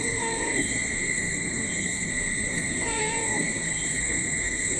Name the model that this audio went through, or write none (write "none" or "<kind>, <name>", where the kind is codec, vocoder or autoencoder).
codec, SNAC